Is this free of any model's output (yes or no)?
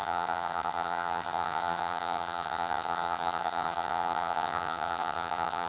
no